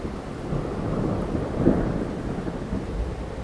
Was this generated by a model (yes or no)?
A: no